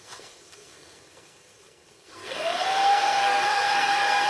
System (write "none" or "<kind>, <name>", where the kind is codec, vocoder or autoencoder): codec, SNAC